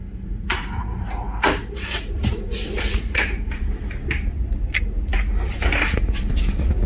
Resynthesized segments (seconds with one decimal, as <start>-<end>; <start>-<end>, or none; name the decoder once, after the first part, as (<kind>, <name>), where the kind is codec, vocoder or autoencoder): 0.0-3.5 (vocoder, Vocos)